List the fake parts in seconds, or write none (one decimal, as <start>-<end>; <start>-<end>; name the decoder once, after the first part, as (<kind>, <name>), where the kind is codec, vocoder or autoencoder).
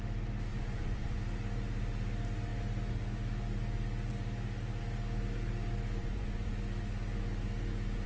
0.5-1.2 (vocoder, Vocos); 6.0-6.5